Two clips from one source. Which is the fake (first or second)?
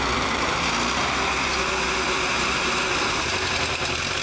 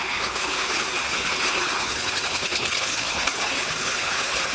second